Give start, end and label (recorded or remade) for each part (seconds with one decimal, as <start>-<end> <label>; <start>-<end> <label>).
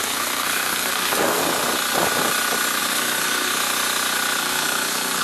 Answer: 0.0-1.4 remade; 1.4-2.8 recorded; 2.8-3.5 remade; 3.5-4.4 recorded; 4.4-5.2 remade